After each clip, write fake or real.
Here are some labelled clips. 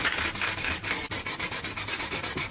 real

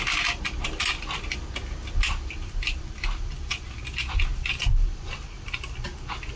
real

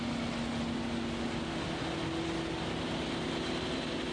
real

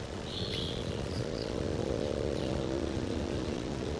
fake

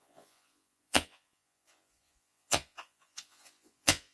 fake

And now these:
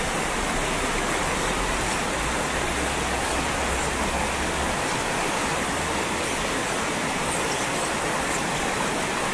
real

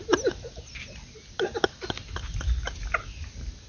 real